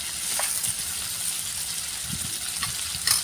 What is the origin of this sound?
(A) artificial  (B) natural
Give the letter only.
B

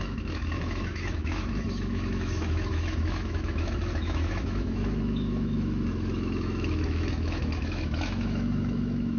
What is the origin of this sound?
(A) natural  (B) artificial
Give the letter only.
B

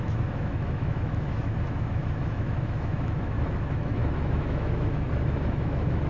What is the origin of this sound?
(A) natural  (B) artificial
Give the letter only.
B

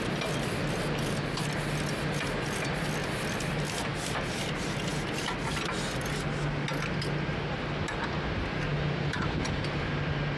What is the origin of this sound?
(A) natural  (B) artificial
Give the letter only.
A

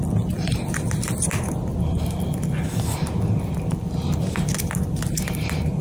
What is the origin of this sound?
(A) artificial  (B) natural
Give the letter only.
B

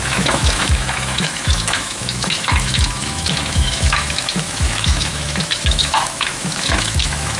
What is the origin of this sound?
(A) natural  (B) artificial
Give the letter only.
B